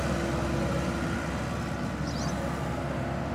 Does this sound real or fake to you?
real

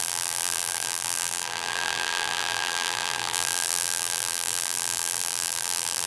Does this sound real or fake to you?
fake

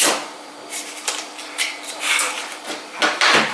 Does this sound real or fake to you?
fake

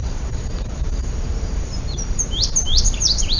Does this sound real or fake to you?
fake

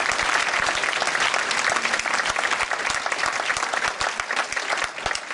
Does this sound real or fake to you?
real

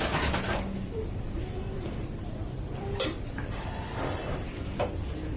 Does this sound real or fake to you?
fake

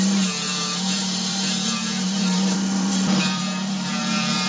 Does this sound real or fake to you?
fake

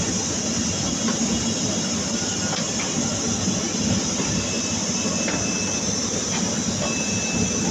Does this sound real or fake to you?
real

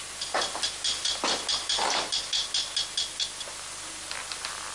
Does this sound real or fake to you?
real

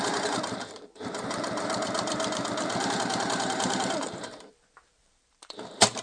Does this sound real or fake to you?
fake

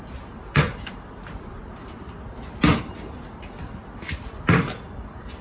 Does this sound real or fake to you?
fake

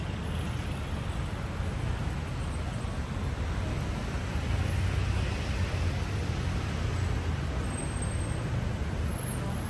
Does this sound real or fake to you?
real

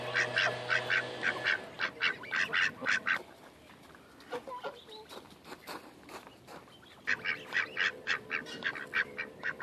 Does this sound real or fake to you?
real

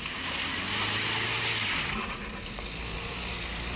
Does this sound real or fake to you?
real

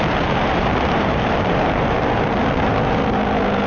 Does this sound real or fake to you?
fake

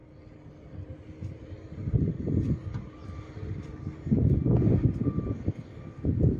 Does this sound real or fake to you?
real